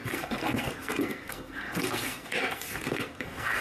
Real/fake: fake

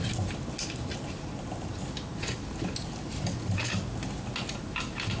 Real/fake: real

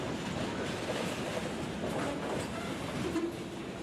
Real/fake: real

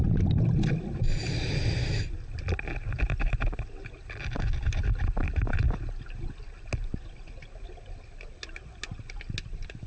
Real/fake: real